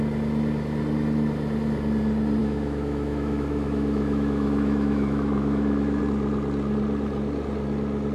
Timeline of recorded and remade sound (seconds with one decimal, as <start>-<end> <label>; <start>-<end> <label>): 0.0-2.4 recorded; 2.4-6.0 remade; 6.0-8.1 recorded